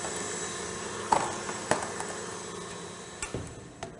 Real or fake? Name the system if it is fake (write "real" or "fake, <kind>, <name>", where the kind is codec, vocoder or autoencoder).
real